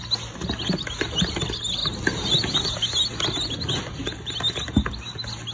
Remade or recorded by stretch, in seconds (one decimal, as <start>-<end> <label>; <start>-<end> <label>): 0.0-5.5 recorded